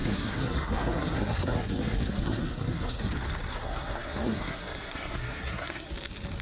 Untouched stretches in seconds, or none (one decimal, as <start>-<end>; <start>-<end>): 3.1-3.5; 5.9-6.4